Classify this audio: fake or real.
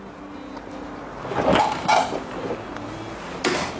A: real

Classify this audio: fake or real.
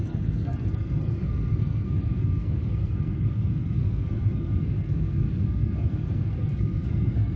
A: fake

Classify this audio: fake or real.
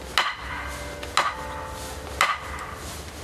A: real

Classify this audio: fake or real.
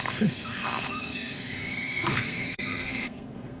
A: fake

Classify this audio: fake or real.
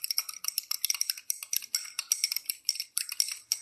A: real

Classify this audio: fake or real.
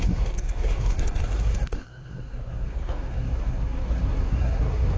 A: fake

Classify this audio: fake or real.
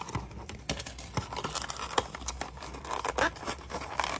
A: real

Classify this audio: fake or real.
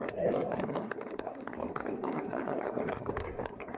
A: fake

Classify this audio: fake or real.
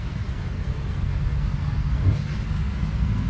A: fake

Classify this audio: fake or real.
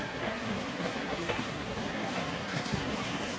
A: fake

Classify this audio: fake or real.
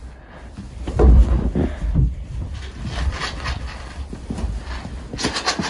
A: real